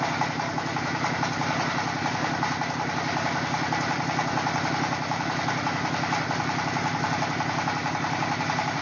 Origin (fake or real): real